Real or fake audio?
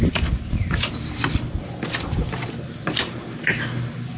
fake